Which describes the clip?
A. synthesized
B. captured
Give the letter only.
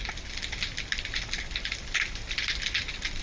B